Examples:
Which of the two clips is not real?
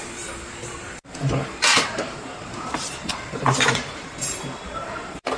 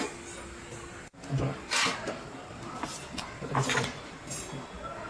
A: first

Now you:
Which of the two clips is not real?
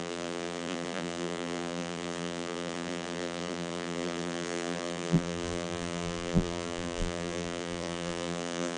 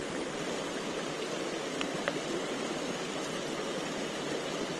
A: first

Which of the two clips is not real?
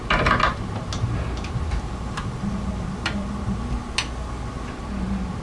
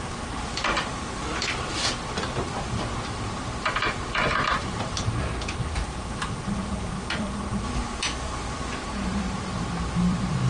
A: second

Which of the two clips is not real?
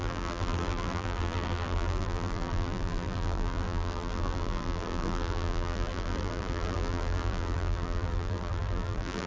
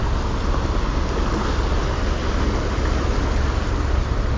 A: first